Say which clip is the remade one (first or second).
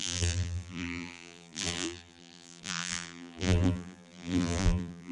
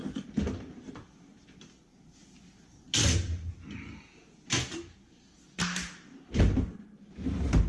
first